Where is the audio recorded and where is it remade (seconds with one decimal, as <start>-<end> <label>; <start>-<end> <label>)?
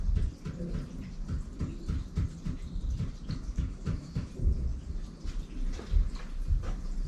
0.0-3.5 recorded; 3.5-4.3 remade; 4.3-7.1 recorded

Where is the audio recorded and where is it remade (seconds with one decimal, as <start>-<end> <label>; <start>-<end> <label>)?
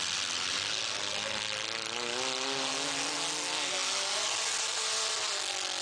0.0-5.8 recorded